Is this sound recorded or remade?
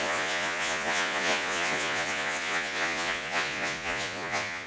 remade